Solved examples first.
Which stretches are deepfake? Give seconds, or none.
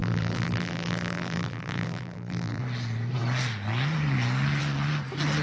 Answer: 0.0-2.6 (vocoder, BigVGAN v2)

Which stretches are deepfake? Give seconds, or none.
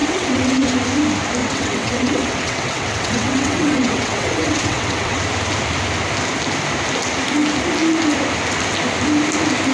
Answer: 0.0-0.7 (vocoder, WaveNeXt); 1.4-5.2